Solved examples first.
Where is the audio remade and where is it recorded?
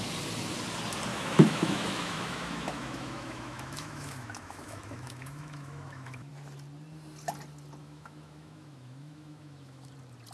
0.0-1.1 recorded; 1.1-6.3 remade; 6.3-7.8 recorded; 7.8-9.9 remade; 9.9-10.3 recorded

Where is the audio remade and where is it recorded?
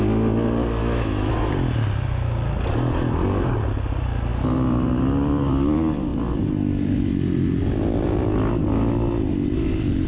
0.0-0.8 recorded; 0.8-1.3 remade; 1.3-10.1 recorded